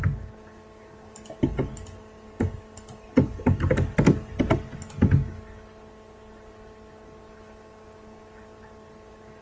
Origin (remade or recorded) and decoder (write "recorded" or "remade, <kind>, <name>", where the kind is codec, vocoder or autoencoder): recorded